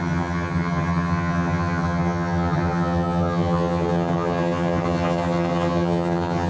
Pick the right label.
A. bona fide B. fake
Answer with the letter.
B